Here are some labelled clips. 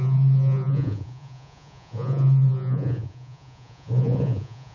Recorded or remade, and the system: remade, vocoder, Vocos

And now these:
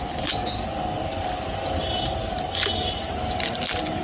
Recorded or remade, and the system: recorded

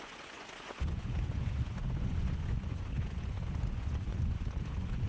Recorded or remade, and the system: remade, vocoder, Vocos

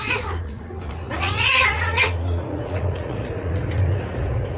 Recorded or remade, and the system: remade, vocoder, Vocos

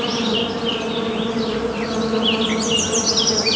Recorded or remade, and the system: recorded